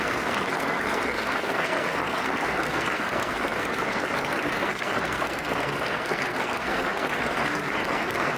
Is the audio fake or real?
fake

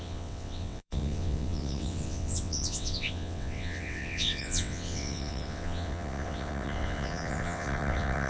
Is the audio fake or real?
fake